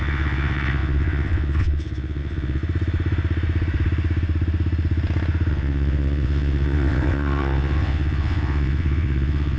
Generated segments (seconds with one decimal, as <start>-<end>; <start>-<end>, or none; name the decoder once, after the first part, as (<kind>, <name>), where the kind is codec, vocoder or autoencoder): 0.0-2.6 (vocoder, WaveNeXt); 5.5-9.6